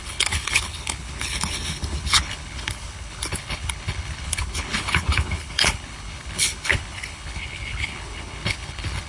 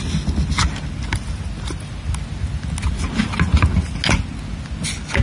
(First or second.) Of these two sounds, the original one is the second